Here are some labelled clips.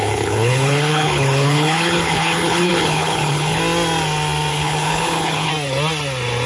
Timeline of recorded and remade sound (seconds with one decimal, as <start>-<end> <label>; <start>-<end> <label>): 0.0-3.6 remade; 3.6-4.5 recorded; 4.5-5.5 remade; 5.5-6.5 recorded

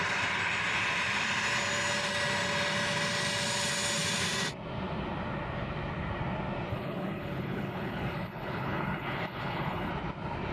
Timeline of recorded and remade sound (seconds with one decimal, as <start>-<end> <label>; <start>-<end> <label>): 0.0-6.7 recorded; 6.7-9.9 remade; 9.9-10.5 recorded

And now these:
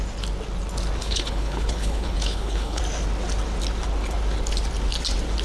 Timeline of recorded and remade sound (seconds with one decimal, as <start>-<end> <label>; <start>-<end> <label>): 0.0-1.0 recorded; 1.0-2.8 remade; 2.8-5.4 recorded

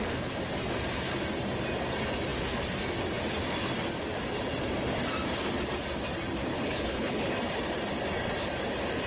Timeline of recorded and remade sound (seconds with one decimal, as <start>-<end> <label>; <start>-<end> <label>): 0.0-6.5 recorded; 6.5-7.3 remade; 7.3-9.1 recorded

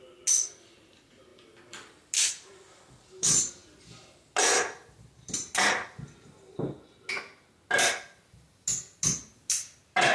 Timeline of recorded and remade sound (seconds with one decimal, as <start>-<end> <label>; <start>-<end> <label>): 0.0-10.1 recorded

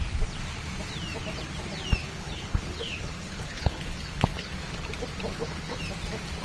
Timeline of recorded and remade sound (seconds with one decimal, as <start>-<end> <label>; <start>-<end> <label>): 0.0-2.0 recorded; 2.0-4.5 remade; 4.5-5.3 recorded; 5.3-5.8 remade; 5.8-6.4 recorded

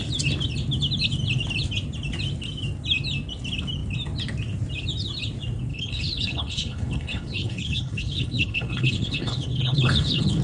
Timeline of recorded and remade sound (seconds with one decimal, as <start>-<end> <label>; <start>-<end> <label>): 0.0-5.7 recorded; 5.7-10.4 remade

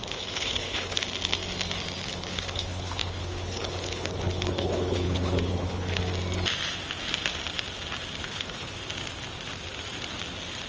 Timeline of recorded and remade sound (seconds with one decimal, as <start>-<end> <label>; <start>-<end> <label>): 0.0-1.0 remade; 1.0-2.0 recorded; 2.0-6.0 remade; 6.0-8.2 recorded; 8.2-8.8 remade; 8.8-10.7 recorded